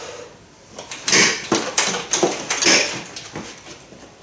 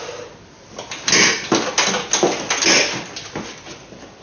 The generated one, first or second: first